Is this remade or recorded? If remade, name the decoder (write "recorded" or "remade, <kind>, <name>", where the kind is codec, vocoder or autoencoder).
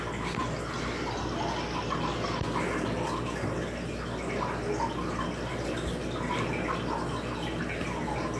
recorded